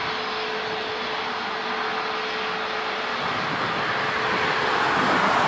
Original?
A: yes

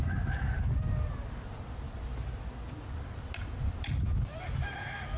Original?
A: yes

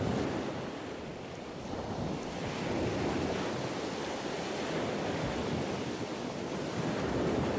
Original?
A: yes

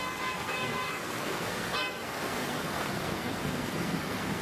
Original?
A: no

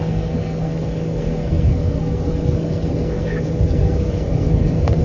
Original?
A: no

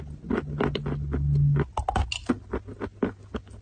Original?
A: yes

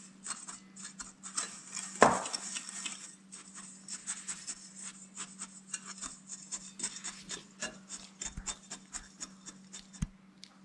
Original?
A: yes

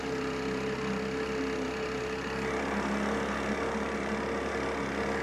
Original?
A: yes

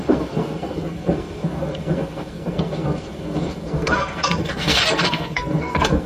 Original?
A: no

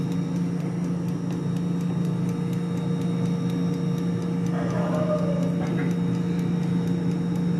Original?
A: yes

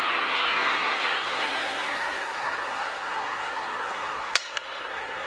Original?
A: no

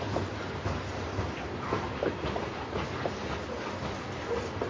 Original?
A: yes